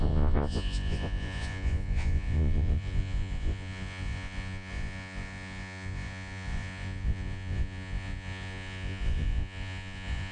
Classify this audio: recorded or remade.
remade